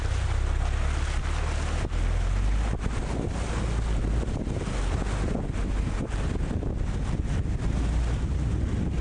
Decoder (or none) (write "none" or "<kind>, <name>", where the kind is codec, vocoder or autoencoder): none